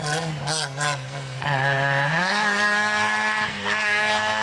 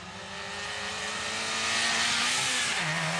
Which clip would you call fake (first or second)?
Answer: first